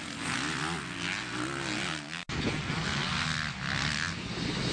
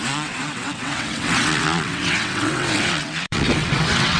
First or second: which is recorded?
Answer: first